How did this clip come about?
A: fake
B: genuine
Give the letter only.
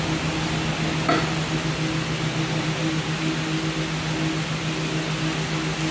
B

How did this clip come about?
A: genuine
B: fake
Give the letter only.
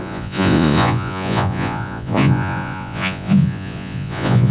B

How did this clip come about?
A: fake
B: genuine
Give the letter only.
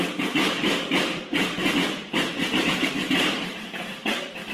A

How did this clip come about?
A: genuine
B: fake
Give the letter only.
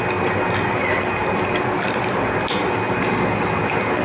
A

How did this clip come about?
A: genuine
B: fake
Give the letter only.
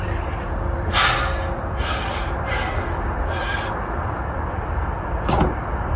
A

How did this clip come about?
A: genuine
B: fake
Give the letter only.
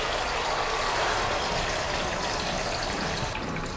A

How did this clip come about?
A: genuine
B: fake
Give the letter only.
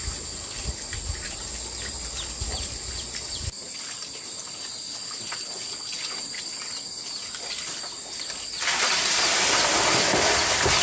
A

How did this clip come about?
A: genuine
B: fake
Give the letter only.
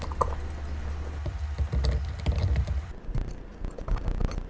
A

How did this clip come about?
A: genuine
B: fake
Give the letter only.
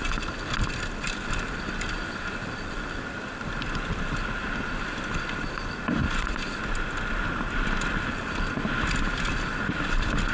A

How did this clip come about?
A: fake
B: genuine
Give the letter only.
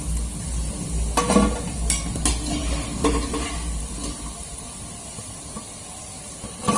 B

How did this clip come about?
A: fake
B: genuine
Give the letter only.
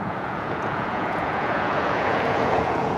A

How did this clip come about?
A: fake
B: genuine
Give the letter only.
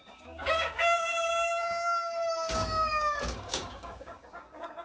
A